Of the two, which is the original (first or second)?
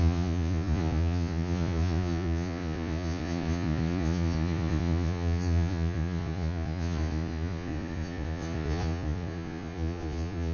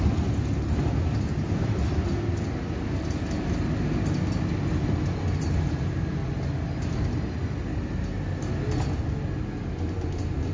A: second